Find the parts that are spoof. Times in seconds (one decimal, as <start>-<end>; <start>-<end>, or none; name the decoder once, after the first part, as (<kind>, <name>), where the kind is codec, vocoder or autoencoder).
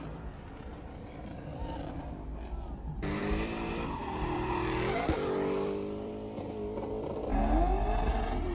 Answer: 3.2-6.1 (vocoder, BigVGAN v2)